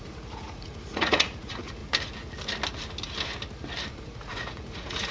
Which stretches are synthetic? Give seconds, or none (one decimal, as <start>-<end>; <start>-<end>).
0.0-1.8; 3.9-5.1